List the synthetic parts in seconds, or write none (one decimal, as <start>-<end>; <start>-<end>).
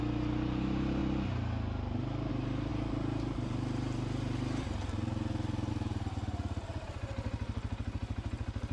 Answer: 0.0-1.0; 2.3-8.7